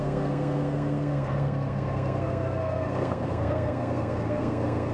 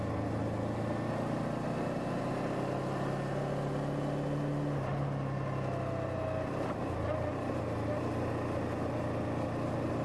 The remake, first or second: first